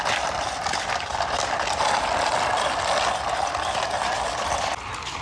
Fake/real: real